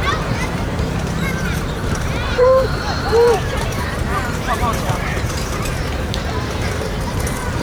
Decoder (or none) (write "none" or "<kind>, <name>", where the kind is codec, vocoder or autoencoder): vocoder, BigVGAN v2